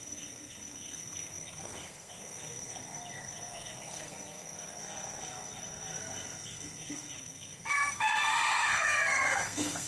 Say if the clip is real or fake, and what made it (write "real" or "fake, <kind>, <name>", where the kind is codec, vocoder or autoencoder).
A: fake, codec, SNAC